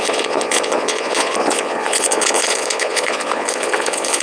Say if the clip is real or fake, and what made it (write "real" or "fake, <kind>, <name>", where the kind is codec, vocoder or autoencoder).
fake, vocoder, Vocos